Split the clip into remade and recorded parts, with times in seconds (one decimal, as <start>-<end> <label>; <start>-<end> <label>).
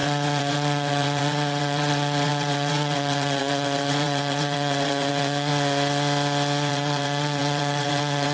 0.0-5.5 remade; 5.5-6.7 recorded; 6.7-8.3 remade